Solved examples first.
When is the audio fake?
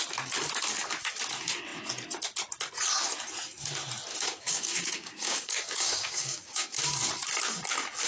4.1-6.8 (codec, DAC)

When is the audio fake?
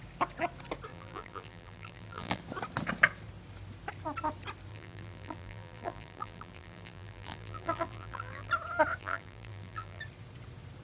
0.9-2.4 (vocoder, BigVGAN v2); 4.7-8.5; 9.0-10.0